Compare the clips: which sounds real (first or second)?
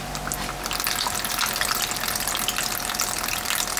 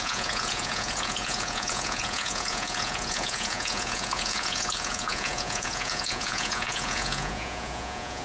first